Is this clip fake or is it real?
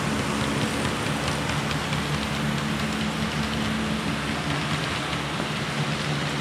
real